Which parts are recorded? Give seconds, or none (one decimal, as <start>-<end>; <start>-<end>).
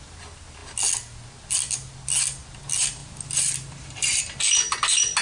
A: 0.0-3.0; 4.2-5.2